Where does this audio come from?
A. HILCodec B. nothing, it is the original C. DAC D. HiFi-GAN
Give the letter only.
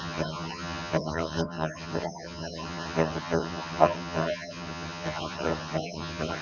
D